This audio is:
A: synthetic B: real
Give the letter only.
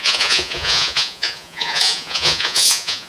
A